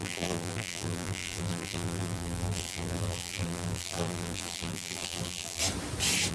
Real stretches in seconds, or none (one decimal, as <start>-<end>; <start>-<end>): 5.6-6.3